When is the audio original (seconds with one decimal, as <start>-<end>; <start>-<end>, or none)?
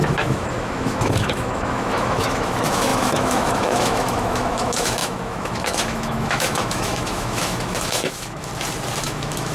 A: 8.5-9.0